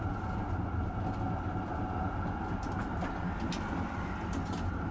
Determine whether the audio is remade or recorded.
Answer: recorded